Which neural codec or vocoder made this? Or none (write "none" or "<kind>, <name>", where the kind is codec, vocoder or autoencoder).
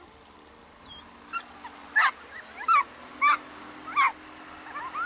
none